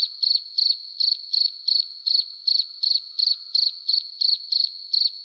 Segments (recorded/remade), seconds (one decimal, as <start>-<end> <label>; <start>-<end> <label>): 0.0-5.2 recorded

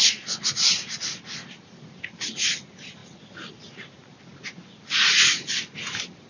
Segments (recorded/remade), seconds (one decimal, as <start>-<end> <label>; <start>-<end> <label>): 0.0-6.3 recorded

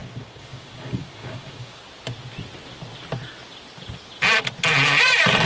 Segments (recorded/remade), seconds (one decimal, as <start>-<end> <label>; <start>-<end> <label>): 0.0-1.8 remade; 1.8-5.5 recorded

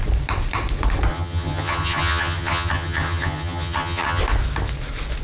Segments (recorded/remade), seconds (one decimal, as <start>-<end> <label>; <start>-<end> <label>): 0.0-1.1 recorded; 1.1-4.2 remade; 4.2-5.2 recorded